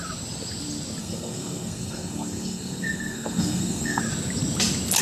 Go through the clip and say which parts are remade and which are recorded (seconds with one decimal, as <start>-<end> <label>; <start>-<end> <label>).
0.0-1.0 recorded; 1.0-4.0 remade; 4.0-5.0 recorded